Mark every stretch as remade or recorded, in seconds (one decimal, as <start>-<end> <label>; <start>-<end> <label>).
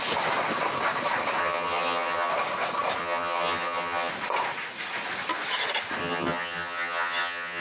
0.0-1.4 recorded; 1.4-2.3 remade; 2.3-3.0 recorded; 3.0-4.1 remade; 4.1-6.0 recorded; 6.0-7.6 remade